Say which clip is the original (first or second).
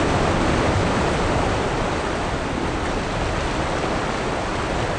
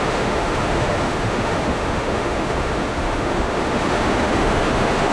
first